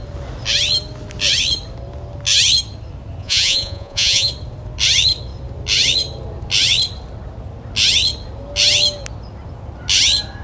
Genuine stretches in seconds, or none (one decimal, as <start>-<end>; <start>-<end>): 0.0-3.2; 4.3-10.4